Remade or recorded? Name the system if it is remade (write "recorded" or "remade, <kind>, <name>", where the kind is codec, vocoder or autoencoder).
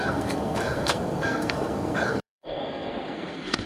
remade, codec, SNAC